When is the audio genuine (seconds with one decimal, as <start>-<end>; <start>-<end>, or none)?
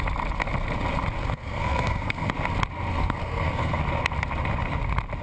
0.0-1.2; 2.3-2.9; 3.8-5.2